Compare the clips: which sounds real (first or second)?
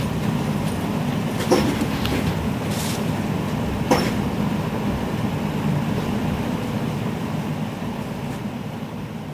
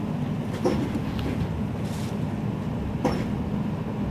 second